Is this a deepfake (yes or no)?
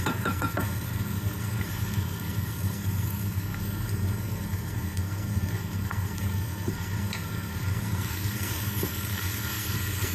yes